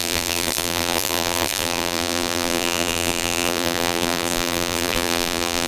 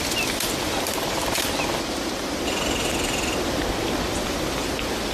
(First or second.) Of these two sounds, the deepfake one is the first